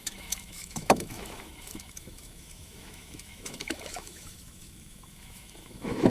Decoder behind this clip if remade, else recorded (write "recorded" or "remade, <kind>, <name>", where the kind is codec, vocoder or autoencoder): remade, autoencoder, DAC-VAE